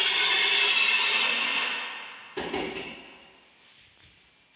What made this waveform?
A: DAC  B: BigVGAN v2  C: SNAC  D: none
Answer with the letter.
D